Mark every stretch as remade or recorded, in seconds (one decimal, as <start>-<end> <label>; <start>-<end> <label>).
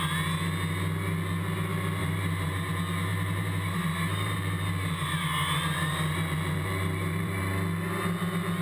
0.0-2.0 recorded; 2.0-2.7 remade; 2.7-3.1 recorded; 3.1-7.4 remade; 7.4-8.6 recorded